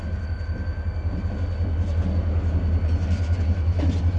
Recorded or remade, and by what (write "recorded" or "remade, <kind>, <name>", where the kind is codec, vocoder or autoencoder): recorded